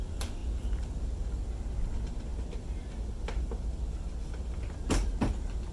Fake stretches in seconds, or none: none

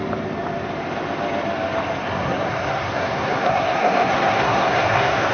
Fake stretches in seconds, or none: 2.0-5.3 (codec, SNAC)

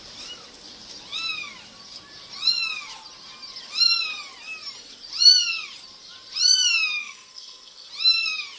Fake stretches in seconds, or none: 7.0-7.9 (codec, SNAC)

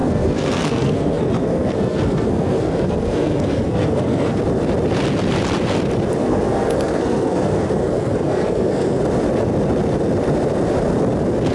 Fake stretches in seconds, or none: 0.0-4.4 (codec, SNAC); 6.2-9.0

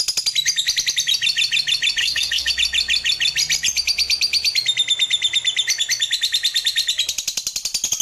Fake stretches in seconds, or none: 2.0-2.5 (codec, SNAC)

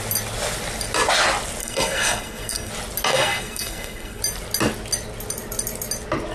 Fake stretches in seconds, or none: 1.6-2.7 (codec, SNAC); 3.1-4.2

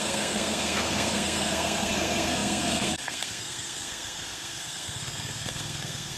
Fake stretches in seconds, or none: 0.0-6.2 (codec, SNAC)

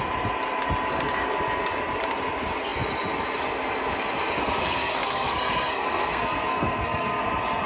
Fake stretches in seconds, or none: 4.6-7.2 (codec, SNAC)